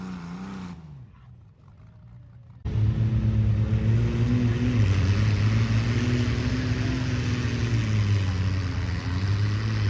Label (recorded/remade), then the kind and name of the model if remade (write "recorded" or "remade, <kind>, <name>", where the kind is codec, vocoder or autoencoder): recorded